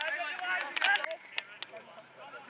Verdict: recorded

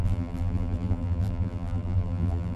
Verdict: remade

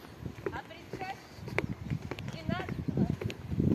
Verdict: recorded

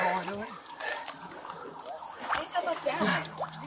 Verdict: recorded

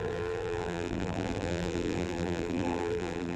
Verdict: remade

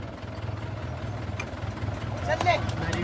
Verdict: recorded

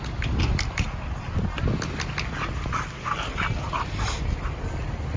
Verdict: recorded